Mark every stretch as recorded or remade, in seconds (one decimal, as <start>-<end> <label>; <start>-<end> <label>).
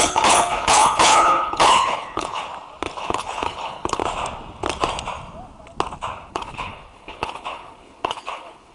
0.0-2.5 remade; 2.5-3.0 recorded; 3.0-4.0 remade; 4.0-6.3 recorded; 6.3-8.7 remade